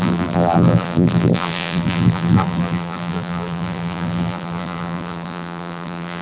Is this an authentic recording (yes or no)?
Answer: no